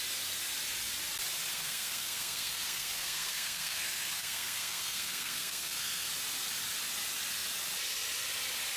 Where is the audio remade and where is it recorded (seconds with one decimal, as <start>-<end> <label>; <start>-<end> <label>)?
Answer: 0.0-1.5 recorded; 1.5-6.1 remade; 6.1-8.8 recorded